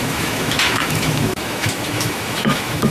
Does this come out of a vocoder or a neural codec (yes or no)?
yes